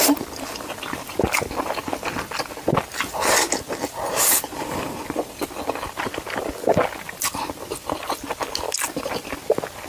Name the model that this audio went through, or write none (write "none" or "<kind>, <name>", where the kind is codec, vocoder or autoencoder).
none